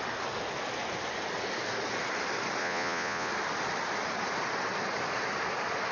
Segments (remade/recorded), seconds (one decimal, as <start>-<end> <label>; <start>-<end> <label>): 0.0-2.6 recorded; 2.6-3.3 remade; 3.3-5.9 recorded